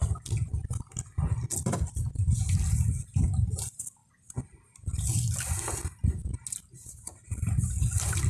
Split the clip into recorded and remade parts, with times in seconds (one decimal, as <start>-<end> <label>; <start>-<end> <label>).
0.0-8.3 recorded